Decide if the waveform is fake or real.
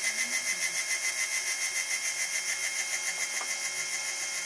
real